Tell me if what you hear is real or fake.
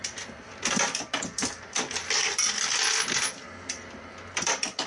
real